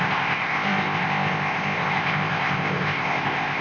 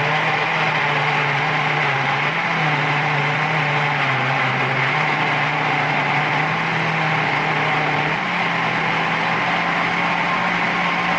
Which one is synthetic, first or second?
first